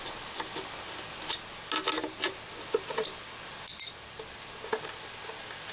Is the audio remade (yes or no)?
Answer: no